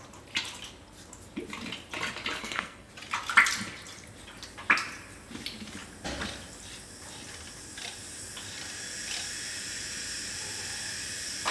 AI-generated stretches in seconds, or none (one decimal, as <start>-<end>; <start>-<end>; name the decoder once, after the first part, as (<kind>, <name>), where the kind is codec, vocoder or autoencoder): 2.4-2.9 (codec, SNAC)